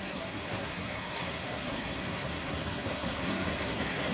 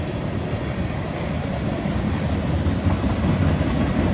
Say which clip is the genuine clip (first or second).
second